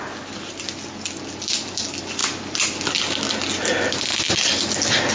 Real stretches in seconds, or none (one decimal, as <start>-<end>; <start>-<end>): 0.0-5.1